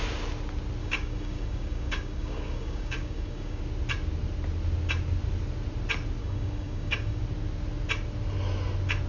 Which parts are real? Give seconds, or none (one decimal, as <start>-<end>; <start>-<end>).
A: 0.0-0.8; 3.6-6.2; 7.2-9.1